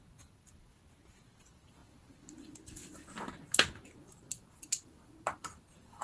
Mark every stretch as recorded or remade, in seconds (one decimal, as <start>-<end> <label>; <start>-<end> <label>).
0.0-1.8 remade; 1.8-2.4 recorded; 2.4-2.8 remade; 2.8-5.4 recorded; 5.4-6.0 remade